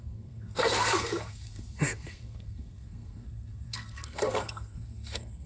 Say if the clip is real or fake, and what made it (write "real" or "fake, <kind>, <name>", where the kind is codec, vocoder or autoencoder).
fake, codec, SNAC